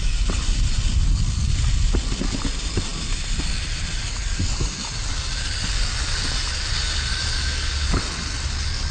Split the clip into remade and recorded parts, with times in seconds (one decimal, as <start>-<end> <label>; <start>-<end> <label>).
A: 0.0-7.1 recorded; 7.1-8.0 remade; 8.0-8.9 recorded